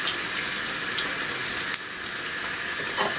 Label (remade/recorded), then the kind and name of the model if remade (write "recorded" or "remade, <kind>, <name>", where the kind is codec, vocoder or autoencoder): recorded